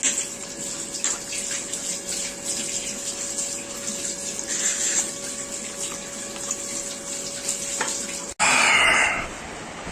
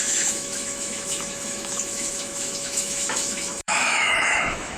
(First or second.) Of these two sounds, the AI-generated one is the second